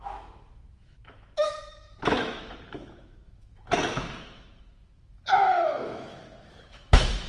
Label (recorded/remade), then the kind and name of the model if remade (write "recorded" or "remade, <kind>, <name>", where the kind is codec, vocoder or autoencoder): remade, autoencoder, DAC-VAE